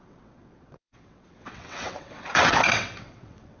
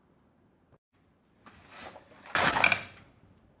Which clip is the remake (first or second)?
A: first